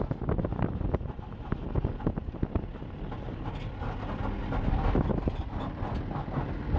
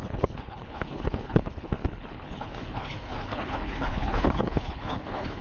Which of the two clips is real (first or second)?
first